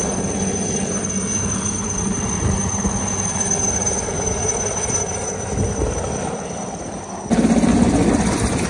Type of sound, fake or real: real